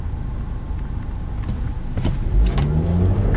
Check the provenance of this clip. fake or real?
real